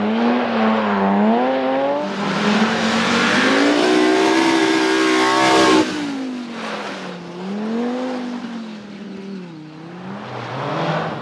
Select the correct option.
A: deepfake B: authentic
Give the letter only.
B